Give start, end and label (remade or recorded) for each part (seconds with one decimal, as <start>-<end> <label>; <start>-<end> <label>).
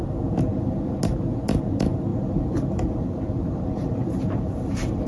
0.0-2.1 recorded; 2.1-5.1 remade